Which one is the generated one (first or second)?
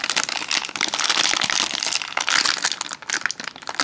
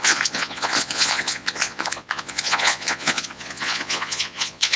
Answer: second